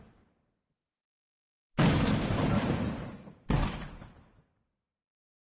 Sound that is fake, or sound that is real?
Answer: real